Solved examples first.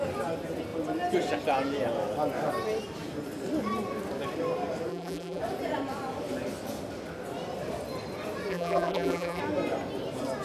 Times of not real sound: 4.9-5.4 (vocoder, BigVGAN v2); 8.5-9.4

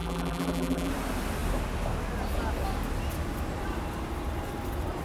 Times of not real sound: 0.0-0.9 (vocoder, BigVGAN v2)

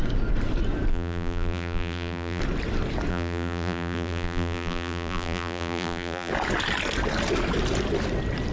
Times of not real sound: 0.9-2.4 (vocoder, BigVGAN v2); 3.1-6.3

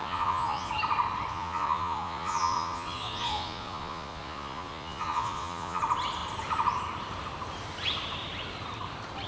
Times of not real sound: 0.0-0.7 (vocoder, Vocos); 1.3-5.8

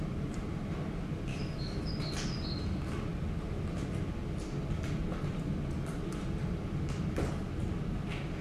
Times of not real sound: 1.3-1.9 (autoencoder, DAC-VAE)

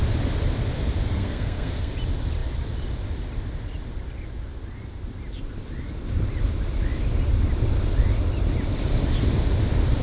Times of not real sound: 1.1-1.9 (codec, SNAC)

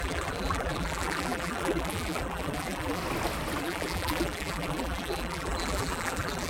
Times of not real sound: 0.0-3.0 (vocoder, BigVGAN v2); 3.6-6.5

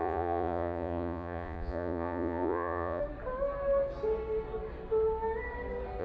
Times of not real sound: 0.0-3.0 (vocoder, Vocos)